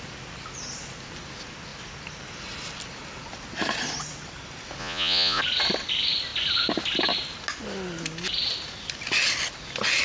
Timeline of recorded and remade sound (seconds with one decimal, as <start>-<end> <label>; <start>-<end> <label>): 0.0-4.8 recorded; 4.8-5.4 remade; 5.4-10.0 recorded